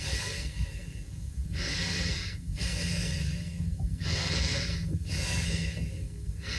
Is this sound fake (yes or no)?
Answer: yes